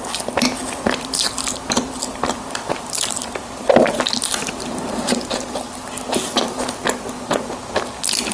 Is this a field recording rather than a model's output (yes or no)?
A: yes